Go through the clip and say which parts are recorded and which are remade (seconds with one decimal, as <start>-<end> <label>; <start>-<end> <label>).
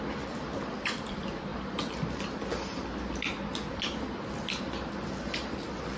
0.0-6.0 recorded